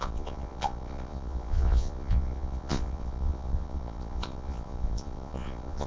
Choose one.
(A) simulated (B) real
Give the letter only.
A